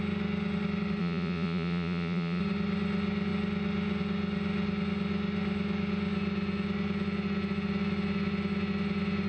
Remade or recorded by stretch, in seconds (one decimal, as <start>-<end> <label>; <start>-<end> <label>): 0.0-1.0 recorded; 1.0-2.4 remade; 2.4-9.3 recorded